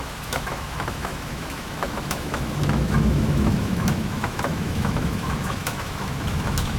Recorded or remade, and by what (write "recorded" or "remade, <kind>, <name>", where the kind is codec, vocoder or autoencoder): remade, autoencoder, DAC-VAE